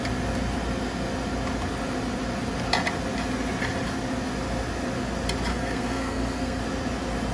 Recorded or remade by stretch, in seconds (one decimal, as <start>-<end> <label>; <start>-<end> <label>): 0.0-5.5 recorded; 5.5-6.6 remade; 6.6-7.3 recorded